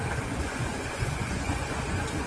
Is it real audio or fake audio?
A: fake